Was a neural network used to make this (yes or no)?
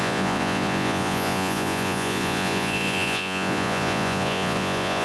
yes